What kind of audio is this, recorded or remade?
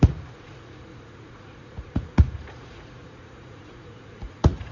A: remade